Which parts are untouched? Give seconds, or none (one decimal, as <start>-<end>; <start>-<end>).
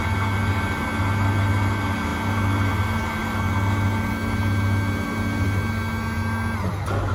0.0-7.1